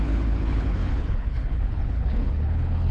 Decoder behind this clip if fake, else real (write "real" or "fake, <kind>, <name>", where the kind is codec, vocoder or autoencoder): fake, codec, HILCodec